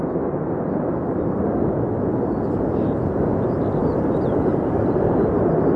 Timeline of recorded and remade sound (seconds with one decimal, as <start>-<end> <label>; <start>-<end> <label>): 0.0-3.8 recorded; 3.8-5.3 remade; 5.3-5.8 recorded